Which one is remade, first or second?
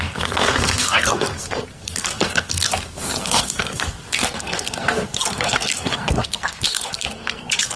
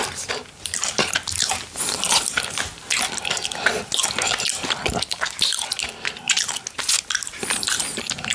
first